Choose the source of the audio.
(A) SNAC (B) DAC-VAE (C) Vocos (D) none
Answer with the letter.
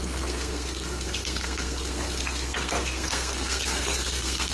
A